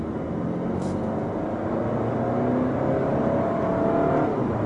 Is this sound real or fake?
real